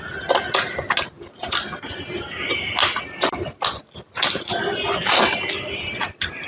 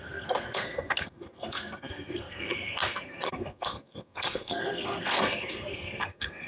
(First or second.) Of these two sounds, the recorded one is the first